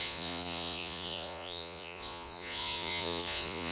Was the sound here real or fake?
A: fake